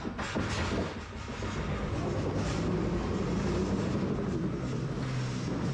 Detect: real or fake real